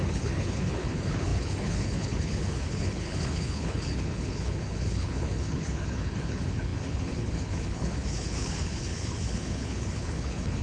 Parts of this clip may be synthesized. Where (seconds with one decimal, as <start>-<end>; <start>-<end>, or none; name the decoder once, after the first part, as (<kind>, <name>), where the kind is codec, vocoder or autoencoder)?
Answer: 0.0-10.6 (codec, HILCodec)